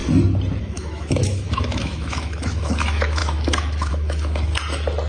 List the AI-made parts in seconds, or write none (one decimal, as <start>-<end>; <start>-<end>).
0.6-4.5